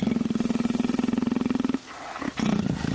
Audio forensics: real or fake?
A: real